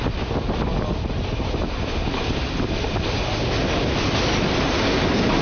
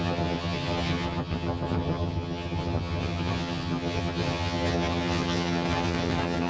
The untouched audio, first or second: first